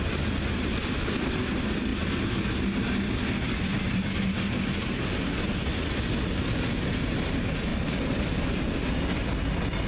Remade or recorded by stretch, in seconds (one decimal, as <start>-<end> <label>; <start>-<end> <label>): 0.0-9.9 recorded